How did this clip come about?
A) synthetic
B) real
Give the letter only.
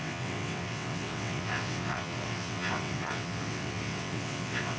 A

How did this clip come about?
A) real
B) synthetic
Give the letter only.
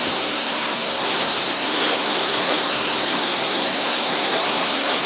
B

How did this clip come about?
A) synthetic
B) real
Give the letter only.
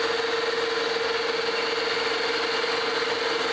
B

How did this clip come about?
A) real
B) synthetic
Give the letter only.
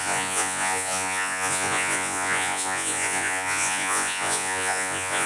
B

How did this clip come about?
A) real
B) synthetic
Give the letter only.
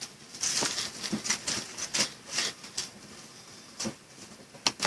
A